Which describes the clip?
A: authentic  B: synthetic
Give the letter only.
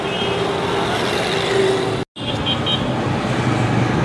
A